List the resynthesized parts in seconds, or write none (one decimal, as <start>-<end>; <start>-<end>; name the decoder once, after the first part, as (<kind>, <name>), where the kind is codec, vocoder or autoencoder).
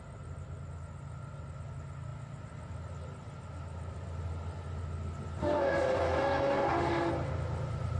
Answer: 5.4-7.1 (autoencoder, DAC-VAE)